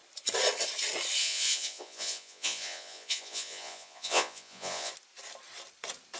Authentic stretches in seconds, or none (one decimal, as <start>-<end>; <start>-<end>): 0.0-1.2; 4.9-6.2